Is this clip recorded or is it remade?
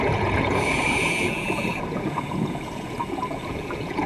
remade